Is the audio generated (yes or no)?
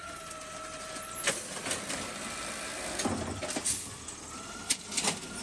no